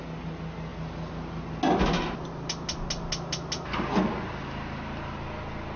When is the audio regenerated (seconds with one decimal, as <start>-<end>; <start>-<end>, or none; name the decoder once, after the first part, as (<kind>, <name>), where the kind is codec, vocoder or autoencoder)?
none